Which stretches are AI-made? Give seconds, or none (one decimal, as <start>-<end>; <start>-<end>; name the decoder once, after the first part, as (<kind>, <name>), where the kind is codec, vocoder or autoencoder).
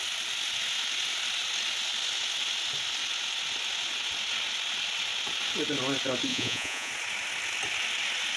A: 6.3-6.9 (vocoder, Vocos)